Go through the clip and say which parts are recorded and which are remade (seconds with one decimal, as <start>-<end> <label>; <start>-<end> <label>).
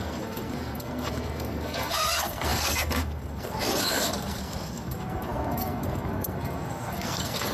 0.0-7.5 remade